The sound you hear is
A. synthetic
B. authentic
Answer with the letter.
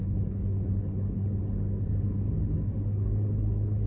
A